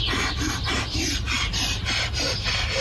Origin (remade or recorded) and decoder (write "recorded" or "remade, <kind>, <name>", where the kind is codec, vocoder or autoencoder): recorded